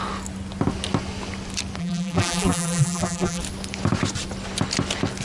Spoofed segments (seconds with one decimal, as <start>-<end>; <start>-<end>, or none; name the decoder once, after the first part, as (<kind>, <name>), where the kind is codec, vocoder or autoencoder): 1.8-3.4 (vocoder, BigVGAN v2)

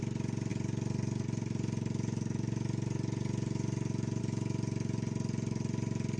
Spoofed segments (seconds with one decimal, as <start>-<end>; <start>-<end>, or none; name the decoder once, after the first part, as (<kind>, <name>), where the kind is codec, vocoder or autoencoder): none

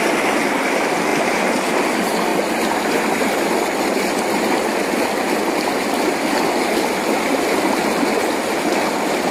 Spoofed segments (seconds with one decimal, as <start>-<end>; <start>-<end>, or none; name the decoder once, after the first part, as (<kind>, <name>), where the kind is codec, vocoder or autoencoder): none

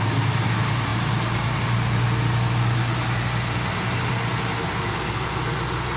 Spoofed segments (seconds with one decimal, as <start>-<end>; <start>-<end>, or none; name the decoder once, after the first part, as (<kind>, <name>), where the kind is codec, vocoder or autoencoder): none

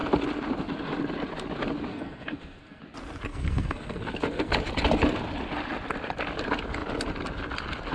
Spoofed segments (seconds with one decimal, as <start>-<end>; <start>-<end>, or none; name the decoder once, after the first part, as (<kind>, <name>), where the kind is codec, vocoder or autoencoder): 1.9-2.8 (codec, SNAC); 3.3-4.5